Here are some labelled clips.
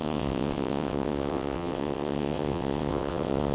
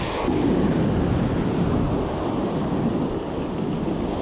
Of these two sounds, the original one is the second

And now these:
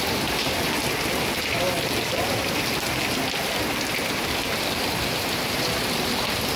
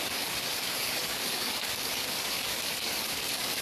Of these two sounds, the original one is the first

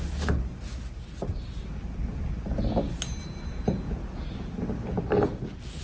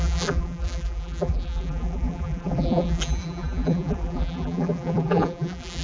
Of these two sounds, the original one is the first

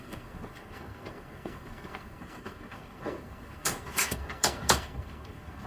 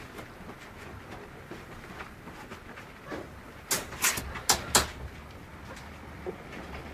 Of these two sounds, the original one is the second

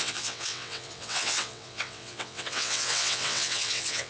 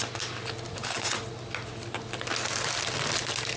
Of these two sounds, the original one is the second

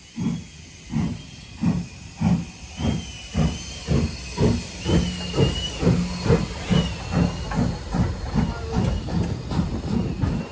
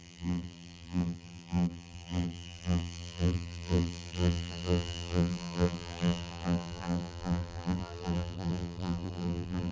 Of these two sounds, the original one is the first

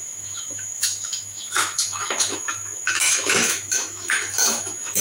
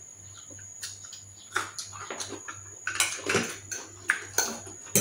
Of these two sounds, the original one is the second